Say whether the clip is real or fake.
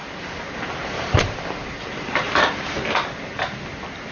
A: real